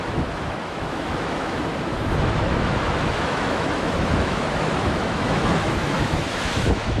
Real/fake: fake